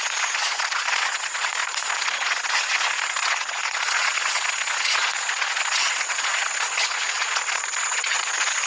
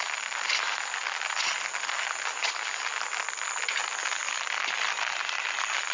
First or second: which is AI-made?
first